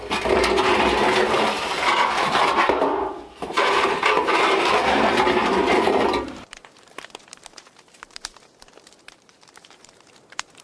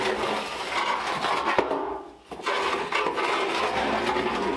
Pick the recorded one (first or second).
second